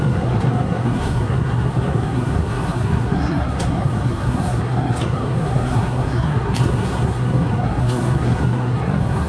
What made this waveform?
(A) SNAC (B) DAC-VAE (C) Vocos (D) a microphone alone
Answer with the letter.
A